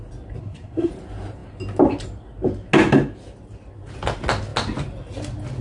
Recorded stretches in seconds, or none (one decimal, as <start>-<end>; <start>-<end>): 0.0-0.4; 0.9-5.6